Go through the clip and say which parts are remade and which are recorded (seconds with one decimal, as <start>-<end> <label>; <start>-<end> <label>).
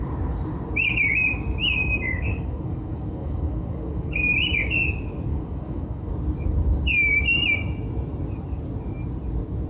0.0-1.6 recorded; 1.6-4.1 remade; 4.1-5.3 recorded; 5.3-6.1 remade; 6.1-9.7 recorded